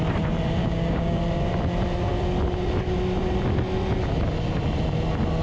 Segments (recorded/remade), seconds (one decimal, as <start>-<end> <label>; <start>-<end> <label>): 0.0-0.6 recorded; 0.6-1.2 remade; 1.2-5.4 recorded